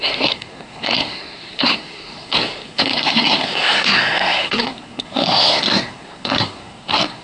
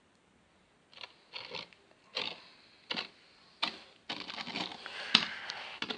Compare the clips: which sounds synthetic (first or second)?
first